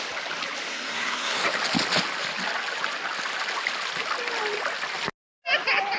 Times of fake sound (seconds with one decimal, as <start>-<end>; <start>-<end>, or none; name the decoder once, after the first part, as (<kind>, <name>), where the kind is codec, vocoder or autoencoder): 0.7-1.4 (codec, SNAC)

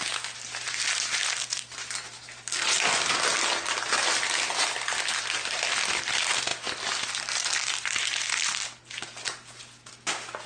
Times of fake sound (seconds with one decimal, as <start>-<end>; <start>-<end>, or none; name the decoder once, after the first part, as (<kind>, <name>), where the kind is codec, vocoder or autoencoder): none

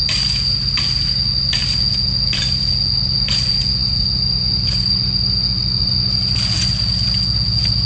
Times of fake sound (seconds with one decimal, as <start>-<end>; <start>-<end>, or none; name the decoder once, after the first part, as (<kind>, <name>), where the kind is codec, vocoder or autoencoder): none

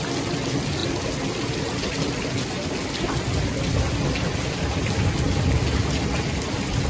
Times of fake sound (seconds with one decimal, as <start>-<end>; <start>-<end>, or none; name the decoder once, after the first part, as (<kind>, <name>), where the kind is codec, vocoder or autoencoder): none

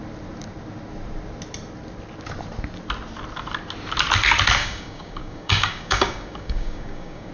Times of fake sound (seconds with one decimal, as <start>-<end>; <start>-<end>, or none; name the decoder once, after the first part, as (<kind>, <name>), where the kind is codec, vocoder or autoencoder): 4.6-7.3 (codec, DAC)

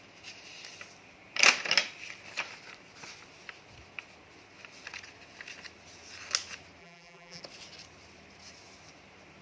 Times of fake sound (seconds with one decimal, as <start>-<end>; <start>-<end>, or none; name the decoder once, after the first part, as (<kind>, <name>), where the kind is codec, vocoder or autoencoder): 6.8-7.4 (vocoder, BigVGAN v2)

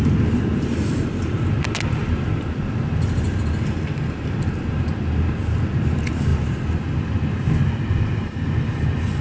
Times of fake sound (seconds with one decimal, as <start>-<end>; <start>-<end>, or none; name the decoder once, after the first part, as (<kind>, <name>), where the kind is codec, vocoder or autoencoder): none